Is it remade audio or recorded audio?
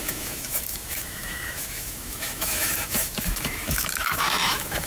remade